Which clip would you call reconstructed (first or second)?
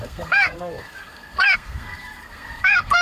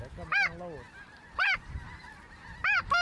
first